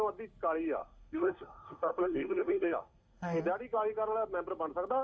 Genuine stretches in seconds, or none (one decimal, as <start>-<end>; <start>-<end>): 0.0-0.8; 3.4-5.0